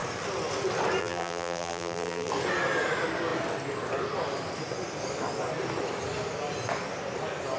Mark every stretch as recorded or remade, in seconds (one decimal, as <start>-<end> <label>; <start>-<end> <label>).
0.0-1.0 recorded; 1.0-2.3 remade; 2.3-7.6 recorded